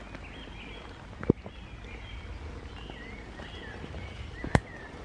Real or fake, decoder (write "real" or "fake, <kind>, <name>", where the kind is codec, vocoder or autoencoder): real